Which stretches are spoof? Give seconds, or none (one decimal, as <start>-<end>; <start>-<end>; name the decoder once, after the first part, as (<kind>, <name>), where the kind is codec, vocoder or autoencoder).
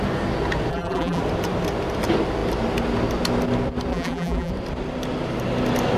0.7-1.2 (vocoder, BigVGAN v2); 3.9-4.5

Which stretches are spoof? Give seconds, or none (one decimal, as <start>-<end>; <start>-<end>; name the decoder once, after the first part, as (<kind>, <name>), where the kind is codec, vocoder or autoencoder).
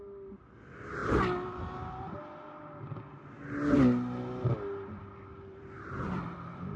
1.0-1.6 (vocoder, BigVGAN v2); 5.3-6.8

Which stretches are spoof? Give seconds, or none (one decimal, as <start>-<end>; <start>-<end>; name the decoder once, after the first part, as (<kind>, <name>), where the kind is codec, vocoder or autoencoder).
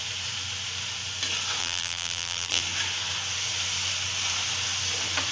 1.6-2.6 (vocoder, BigVGAN v2)